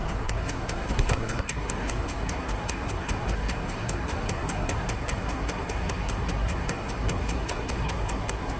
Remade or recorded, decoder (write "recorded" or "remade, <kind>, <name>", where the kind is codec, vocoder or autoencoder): remade, codec, SNAC